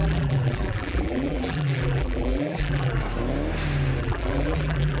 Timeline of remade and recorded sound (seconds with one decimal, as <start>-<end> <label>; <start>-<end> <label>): 0.0-3.0 remade; 3.0-4.0 recorded; 4.0-5.0 remade